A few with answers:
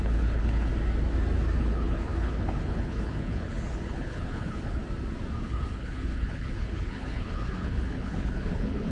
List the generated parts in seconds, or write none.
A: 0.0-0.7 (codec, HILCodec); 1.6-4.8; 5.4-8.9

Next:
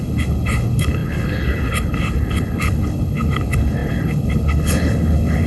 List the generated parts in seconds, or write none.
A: 0.0-5.5 (codec, HILCodec)

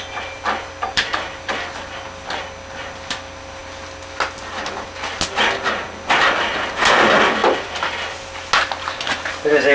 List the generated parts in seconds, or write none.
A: none